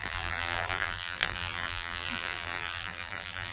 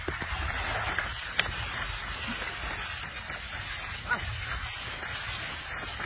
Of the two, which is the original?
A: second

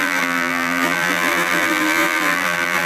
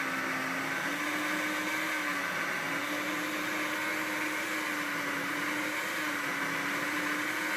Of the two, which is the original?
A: second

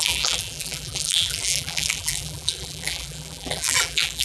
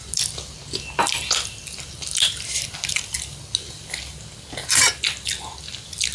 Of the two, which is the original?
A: second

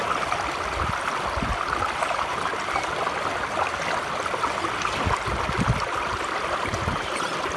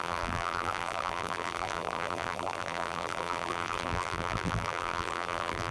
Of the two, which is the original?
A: first